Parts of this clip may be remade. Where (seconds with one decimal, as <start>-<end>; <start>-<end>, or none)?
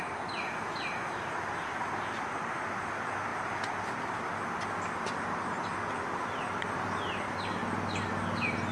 none